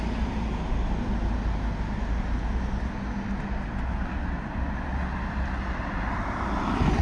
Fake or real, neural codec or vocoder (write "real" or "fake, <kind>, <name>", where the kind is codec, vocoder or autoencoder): real